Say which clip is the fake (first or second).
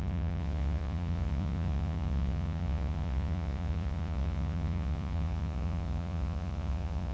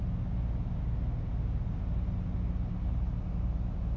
first